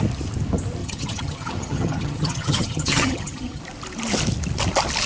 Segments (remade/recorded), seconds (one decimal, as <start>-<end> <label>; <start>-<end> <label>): 0.0-0.8 recorded; 0.8-3.6 remade; 3.6-5.1 recorded